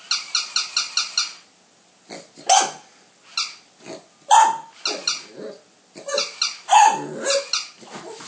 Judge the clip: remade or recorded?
recorded